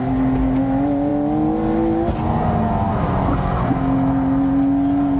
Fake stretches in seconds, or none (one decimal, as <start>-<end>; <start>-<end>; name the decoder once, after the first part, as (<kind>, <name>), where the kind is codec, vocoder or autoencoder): none